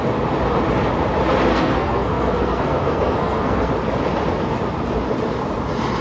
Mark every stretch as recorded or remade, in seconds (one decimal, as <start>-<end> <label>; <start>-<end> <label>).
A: 0.0-1.5 recorded; 1.5-3.7 remade; 3.7-6.0 recorded